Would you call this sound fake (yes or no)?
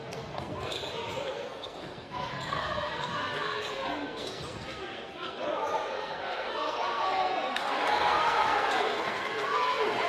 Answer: yes